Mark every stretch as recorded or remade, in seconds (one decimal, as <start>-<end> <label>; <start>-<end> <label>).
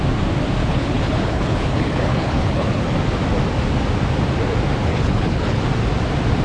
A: 0.0-0.6 recorded; 0.6-2.9 remade; 2.9-4.8 recorded; 4.8-5.6 remade; 5.6-6.4 recorded